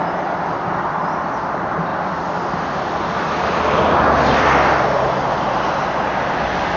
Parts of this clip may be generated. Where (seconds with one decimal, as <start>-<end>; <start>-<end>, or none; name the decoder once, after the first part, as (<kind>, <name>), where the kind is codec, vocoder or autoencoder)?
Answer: none